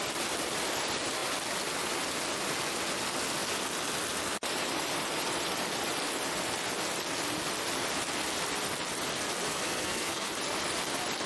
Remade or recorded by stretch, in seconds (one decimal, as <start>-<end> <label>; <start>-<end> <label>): 0.0-9.5 recorded; 9.5-10.3 remade; 10.3-11.3 recorded